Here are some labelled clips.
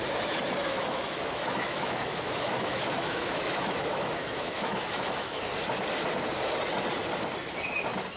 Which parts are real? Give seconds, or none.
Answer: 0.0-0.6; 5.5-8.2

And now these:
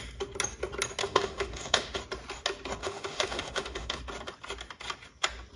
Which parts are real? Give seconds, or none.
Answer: 0.0-1.0; 2.0-2.8; 4.0-5.6